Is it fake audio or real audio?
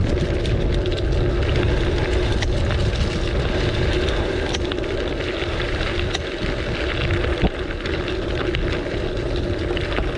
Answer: real